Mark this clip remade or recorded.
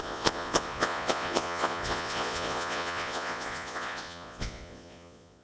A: remade